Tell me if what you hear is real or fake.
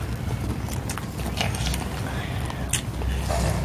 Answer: real